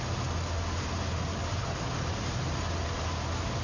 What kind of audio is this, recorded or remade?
recorded